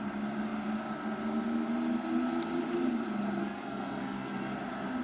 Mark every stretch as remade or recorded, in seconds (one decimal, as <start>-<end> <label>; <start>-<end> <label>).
0.0-3.4 recorded; 3.4-4.5 remade; 4.5-5.0 recorded